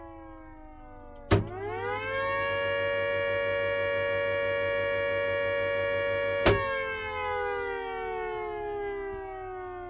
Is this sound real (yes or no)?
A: yes